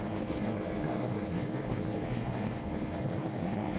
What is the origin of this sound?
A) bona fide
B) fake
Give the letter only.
B